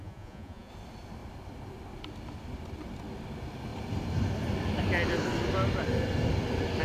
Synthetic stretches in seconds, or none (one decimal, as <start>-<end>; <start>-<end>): 0.0-0.7